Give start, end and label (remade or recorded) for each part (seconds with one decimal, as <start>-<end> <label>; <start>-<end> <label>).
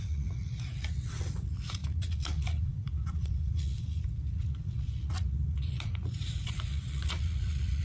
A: 0.0-7.8 remade